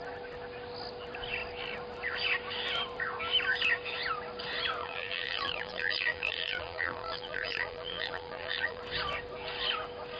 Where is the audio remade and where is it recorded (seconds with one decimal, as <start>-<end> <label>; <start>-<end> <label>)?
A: 0.0-4.8 recorded; 4.8-8.8 remade; 8.8-10.2 recorded